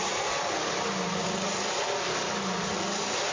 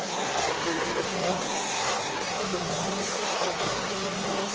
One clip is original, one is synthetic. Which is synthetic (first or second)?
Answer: second